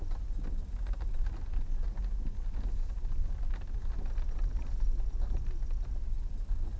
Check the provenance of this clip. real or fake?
real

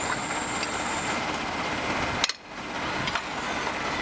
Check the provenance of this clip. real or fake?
real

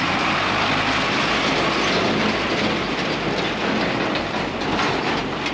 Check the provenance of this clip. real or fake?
real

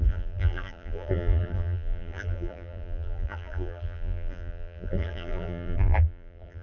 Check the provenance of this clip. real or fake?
fake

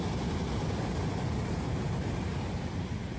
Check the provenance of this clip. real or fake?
real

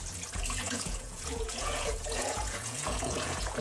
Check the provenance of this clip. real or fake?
fake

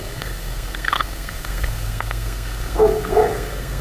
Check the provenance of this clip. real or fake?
fake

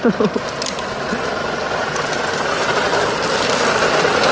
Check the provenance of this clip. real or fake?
real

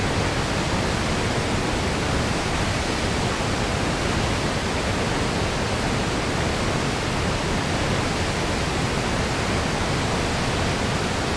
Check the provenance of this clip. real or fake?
real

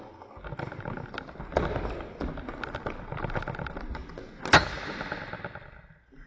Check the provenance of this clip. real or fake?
real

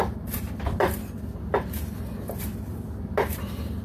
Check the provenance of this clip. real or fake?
real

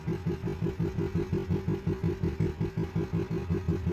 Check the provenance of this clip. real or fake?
real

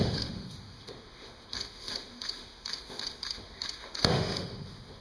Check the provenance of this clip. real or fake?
fake